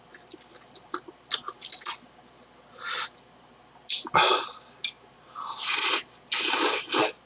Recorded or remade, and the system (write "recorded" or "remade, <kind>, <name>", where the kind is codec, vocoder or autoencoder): recorded